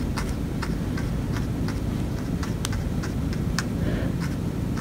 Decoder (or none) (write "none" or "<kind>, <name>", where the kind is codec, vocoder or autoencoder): none